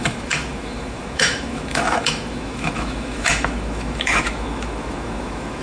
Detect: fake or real fake